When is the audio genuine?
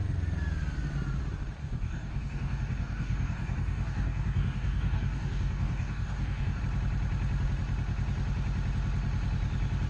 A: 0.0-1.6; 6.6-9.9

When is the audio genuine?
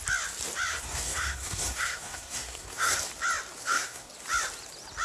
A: 0.0-0.7; 3.0-3.6; 4.1-5.0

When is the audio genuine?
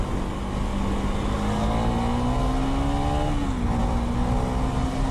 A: 0.0-5.1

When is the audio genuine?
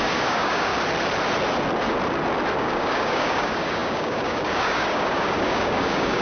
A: 0.7-2.6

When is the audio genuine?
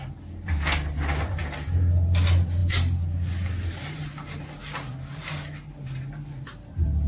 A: 0.0-7.1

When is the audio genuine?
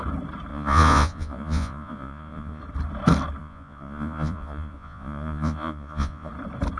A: 0.0-0.5; 2.6-3.4; 6.3-6.8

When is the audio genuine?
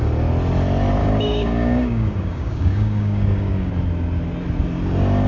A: 0.0-1.0; 3.7-5.3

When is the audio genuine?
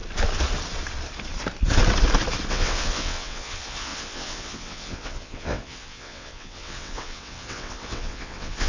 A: 0.0-2.5